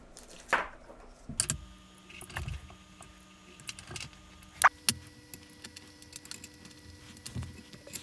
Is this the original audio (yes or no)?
yes